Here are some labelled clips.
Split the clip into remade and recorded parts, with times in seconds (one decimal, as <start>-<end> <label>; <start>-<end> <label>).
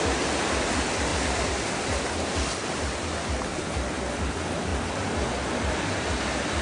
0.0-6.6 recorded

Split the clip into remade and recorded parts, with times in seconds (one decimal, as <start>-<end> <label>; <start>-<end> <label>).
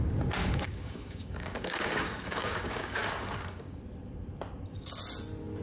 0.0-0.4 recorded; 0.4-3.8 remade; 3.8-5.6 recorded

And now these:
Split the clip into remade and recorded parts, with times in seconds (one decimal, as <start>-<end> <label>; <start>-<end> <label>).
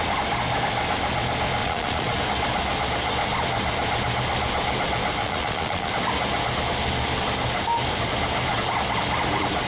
0.0-1.6 recorded; 1.6-2.2 remade; 2.2-5.2 recorded; 5.2-5.9 remade; 5.9-9.7 recorded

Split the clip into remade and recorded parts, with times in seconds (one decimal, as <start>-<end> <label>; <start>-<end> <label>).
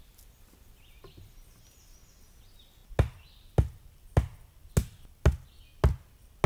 0.0-6.5 recorded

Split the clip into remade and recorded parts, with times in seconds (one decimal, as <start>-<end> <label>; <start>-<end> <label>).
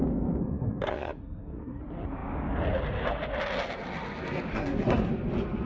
0.0-0.4 recorded; 0.4-1.8 remade; 1.8-4.5 recorded; 4.5-5.1 remade; 5.1-5.7 recorded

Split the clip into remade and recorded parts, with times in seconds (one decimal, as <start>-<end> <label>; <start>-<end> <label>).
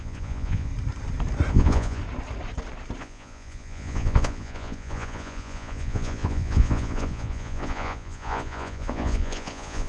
0.0-0.7 remade; 0.7-1.5 recorded; 1.5-2.0 remade; 2.0-3.0 recorded; 3.0-9.9 remade